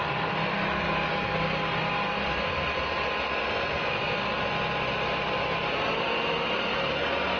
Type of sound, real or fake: real